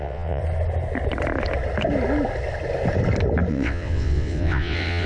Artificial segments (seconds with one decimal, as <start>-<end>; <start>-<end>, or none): 0.0-0.4; 3.5-5.1